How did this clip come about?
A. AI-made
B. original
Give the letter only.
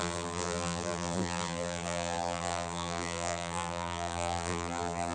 A